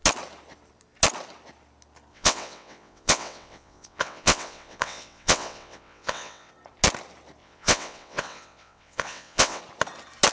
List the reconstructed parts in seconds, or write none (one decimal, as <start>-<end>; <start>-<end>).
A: 2.1-6.5; 7.4-9.6